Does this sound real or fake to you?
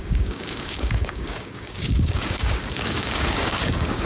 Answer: fake